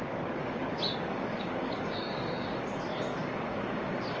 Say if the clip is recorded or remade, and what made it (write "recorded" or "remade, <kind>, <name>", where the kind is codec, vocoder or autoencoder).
remade, codec, DAC